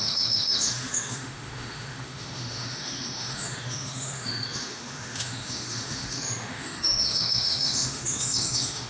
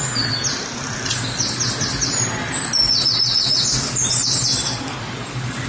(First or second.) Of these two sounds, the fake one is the first